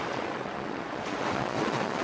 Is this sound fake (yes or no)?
yes